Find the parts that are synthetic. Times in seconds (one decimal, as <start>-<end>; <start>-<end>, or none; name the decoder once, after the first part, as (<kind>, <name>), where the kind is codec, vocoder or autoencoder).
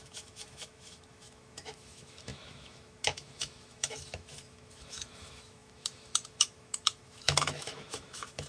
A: 0.0-8.5 (autoencoder, DAC-VAE)